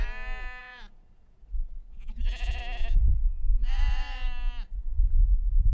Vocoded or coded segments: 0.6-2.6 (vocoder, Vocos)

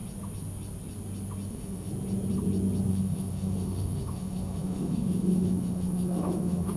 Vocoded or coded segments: 1.5-1.9 (autoencoder, DAC-VAE); 2.9-6.8

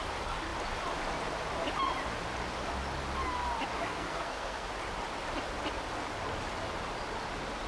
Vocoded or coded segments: 3.9-4.7 (codec, SNAC)

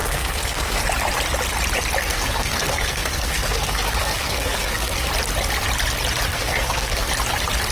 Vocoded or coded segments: 0.0-0.8 (codec, SNAC); 2.0-5.1; 6.3-7.1

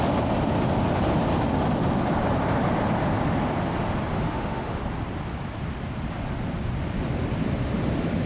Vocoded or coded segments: 4.1-4.8 (autoencoder, DAC-VAE)

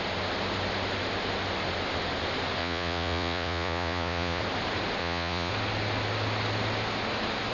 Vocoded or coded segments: 2.6-4.4 (vocoder, Vocos); 5.0-5.5